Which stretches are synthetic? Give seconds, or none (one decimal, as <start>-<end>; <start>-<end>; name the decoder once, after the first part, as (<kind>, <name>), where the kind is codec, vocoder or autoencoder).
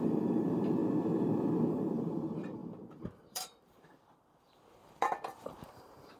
0.0-0.8 (vocoder, BigVGAN v2); 1.7-6.2